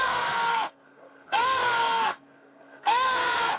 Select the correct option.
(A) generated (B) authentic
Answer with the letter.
A